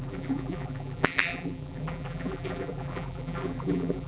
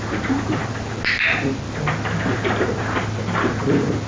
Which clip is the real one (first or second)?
second